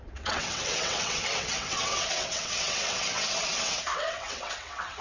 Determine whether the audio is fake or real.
fake